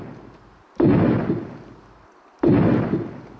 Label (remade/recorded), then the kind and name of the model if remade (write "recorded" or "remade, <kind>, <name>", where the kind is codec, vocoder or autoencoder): recorded